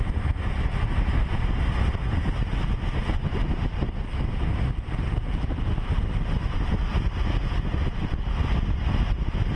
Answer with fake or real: real